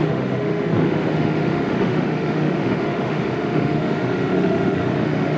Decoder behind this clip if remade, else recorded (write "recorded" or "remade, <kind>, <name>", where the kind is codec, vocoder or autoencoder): remade, autoencoder, DAC-VAE